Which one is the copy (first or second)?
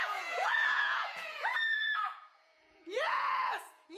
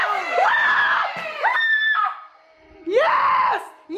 first